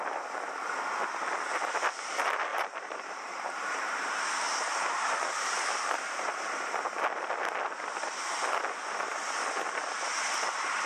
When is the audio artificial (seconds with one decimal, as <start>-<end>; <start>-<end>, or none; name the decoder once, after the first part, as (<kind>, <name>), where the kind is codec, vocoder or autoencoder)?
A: 2.5-6.8 (vocoder, BigVGAN v2)